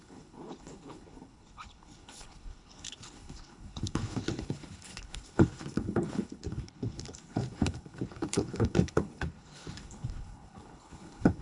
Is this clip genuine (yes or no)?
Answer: no